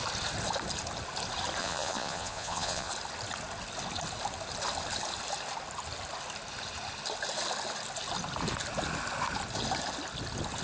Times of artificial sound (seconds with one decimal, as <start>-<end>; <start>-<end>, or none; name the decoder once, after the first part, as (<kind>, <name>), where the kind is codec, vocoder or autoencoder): 1.6-2.9 (vocoder, Vocos)